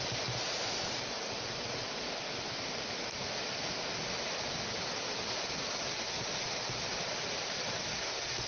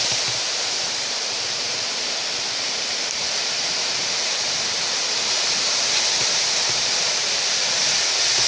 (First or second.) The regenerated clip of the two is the second